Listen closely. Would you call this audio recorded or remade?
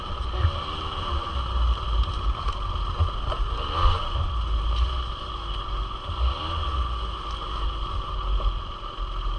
recorded